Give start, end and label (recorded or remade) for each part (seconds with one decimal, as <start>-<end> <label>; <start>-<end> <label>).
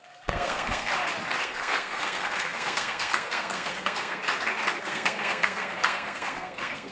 0.0-0.9 remade; 0.9-1.4 recorded; 1.4-4.2 remade; 4.2-4.8 recorded; 4.8-6.9 remade